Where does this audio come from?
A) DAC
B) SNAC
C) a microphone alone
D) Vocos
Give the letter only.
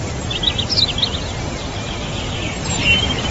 C